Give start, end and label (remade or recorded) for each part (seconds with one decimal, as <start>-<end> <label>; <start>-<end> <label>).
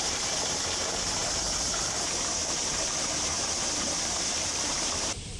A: 0.0-5.4 remade